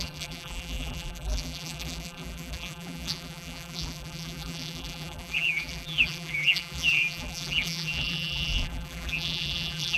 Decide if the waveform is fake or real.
fake